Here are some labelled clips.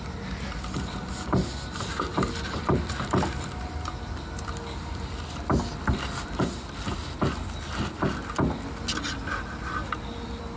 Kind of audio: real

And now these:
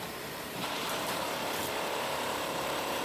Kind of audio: fake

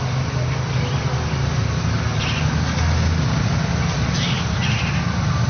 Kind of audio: real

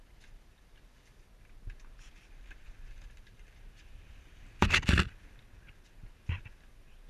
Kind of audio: real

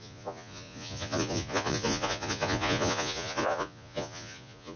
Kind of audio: fake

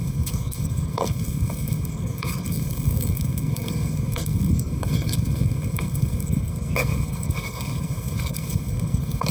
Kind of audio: fake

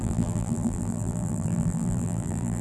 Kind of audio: fake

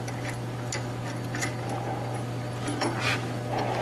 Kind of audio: real